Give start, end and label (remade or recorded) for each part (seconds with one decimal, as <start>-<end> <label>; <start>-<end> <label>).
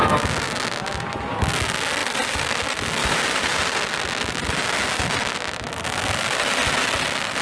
0.0-2.0 recorded; 2.0-2.6 remade; 2.6-3.0 recorded; 3.0-3.6 remade; 3.6-7.4 recorded